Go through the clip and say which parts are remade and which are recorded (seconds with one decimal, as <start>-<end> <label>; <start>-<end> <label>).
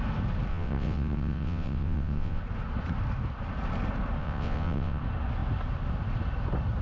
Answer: 0.0-0.5 recorded; 0.5-2.4 remade; 2.4-4.2 recorded; 4.2-5.0 remade; 5.0-6.8 recorded